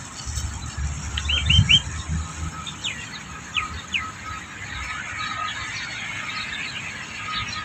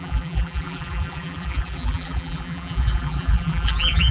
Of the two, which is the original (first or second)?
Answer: first